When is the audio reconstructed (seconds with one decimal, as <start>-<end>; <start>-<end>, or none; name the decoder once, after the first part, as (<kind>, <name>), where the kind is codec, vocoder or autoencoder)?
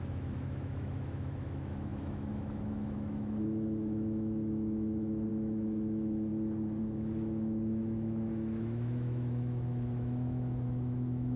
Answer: 0.0-6.3 (autoencoder, DAC-VAE); 6.8-11.4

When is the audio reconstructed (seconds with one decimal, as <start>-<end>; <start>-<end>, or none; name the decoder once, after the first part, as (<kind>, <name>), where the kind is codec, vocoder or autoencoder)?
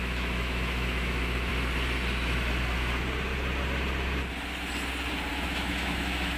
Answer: 0.0-1.5 (autoencoder, DAC-VAE); 5.3-6.4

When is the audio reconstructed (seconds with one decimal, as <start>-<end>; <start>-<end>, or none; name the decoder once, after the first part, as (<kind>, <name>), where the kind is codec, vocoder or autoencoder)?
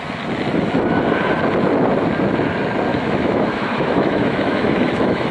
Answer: 2.9-5.3 (autoencoder, DAC-VAE)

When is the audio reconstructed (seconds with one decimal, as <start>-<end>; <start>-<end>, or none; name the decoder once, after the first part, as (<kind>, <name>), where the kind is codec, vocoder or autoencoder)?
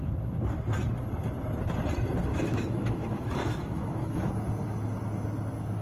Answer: 2.3-4.3 (autoencoder, DAC-VAE)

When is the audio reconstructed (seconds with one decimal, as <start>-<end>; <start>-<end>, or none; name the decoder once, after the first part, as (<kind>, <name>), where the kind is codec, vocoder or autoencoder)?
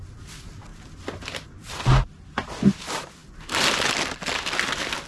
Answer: none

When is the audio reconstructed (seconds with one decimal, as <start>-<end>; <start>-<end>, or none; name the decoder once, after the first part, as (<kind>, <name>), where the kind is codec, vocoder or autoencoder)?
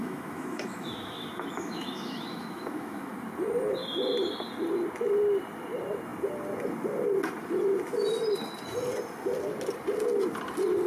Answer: 0.0-3.1 (autoencoder, DAC-VAE)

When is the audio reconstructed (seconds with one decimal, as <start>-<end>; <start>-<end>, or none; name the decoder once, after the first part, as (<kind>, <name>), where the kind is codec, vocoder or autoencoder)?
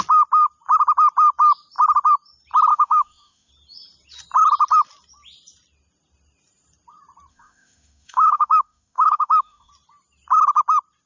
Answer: 2.7-3.5 (autoencoder, DAC-VAE); 7.3-9.7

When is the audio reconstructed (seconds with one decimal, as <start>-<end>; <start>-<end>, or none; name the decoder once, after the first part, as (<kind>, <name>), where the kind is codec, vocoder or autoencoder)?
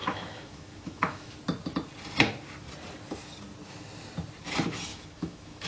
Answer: 0.0-1.3 (autoencoder, DAC-VAE); 4.9-5.7